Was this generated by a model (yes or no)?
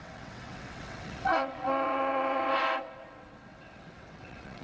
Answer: yes